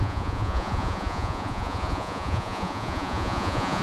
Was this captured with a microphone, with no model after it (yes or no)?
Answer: no